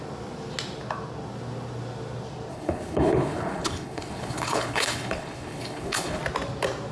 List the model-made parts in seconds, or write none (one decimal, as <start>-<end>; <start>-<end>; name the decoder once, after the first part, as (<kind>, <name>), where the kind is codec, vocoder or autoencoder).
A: 2.5-6.2 (codec, HILCodec)